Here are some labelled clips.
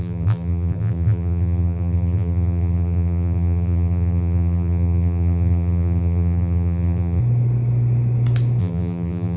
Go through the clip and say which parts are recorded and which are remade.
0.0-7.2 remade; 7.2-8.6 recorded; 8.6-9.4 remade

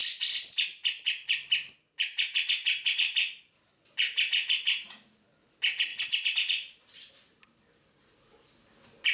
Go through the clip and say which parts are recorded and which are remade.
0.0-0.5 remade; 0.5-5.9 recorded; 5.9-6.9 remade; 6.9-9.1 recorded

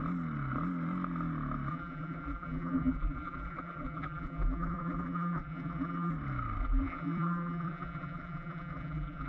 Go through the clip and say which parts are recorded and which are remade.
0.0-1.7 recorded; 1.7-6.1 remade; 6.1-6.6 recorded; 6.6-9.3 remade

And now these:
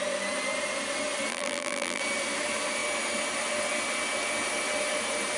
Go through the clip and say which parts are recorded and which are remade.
0.0-1.3 recorded; 1.3-2.0 remade; 2.0-5.4 recorded

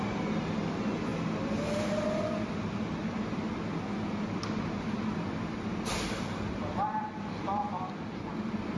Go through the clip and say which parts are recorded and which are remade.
0.0-8.8 recorded